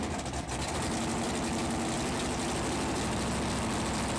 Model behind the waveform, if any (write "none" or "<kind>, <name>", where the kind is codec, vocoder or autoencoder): none